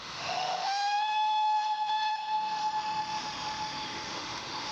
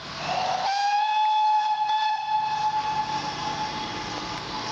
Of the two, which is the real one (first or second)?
second